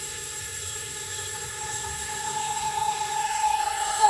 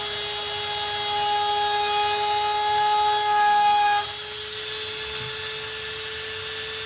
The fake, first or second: first